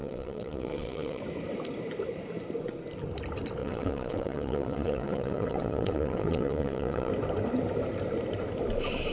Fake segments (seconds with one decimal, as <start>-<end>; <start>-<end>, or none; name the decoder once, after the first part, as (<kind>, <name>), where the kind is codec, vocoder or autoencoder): 0.0-1.2 (vocoder, WaveNeXt); 3.6-7.1

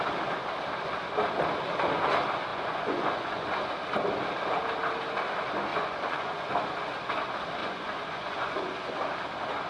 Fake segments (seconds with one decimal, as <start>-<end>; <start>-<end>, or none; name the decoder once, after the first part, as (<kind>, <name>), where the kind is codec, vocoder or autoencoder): 2.5-3.6 (vocoder, Vocos); 5.7-6.5; 7.6-8.9